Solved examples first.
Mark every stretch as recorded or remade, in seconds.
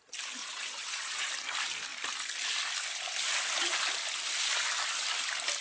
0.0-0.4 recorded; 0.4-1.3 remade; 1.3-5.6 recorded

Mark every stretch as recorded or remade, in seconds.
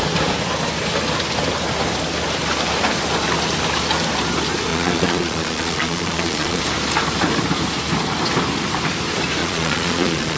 0.0-4.7 recorded; 4.7-6.6 remade; 6.6-9.4 recorded; 9.4-10.4 remade